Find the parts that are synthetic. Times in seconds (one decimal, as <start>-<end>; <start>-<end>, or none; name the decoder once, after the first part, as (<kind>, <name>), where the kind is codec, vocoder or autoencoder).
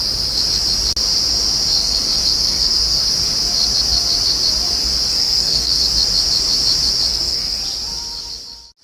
1.8-3.0 (codec, SNAC); 5.2-5.8; 7.1-7.6